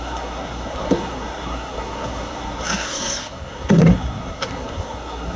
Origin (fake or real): fake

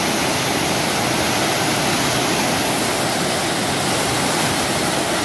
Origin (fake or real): real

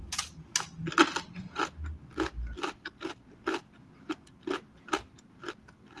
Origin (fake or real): real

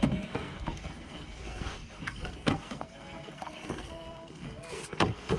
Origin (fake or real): fake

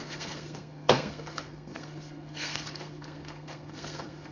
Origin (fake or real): fake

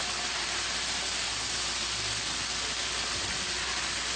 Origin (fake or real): real